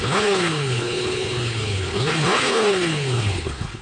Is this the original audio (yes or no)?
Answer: no